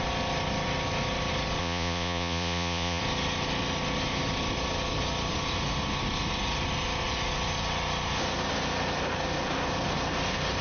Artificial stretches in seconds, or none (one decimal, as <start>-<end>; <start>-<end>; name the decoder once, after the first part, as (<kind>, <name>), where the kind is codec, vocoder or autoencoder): 1.6-3.0 (vocoder, Vocos)